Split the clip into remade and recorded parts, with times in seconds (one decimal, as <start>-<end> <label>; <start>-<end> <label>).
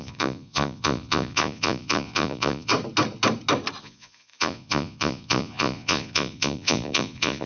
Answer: 0.0-2.7 remade; 2.7-3.8 recorded; 3.8-7.5 remade